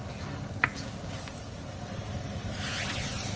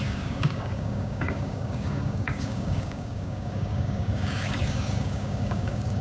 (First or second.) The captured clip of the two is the first